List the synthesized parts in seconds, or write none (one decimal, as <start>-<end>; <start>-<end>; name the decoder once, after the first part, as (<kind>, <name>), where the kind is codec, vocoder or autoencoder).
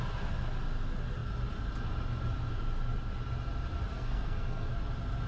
3.9-4.7 (codec, SNAC)